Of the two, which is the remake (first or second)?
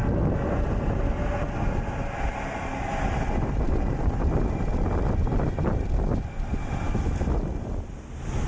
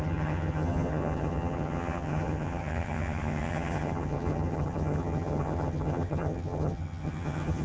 second